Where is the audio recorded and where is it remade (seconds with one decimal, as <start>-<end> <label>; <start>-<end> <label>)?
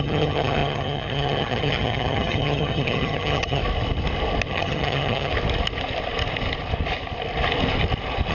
0.0-3.6 remade; 3.6-4.5 recorded; 4.5-5.3 remade; 5.3-8.3 recorded